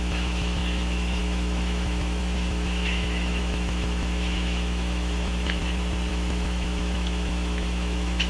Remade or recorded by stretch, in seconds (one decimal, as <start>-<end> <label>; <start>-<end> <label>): 0.0-5.6 remade; 5.6-6.1 recorded; 6.1-8.3 remade